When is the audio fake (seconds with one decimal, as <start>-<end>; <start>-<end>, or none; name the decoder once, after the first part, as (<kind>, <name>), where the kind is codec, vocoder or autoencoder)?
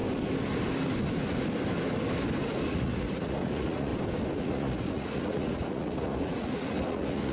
2.7-3.9 (vocoder, Vocos); 4.4-7.3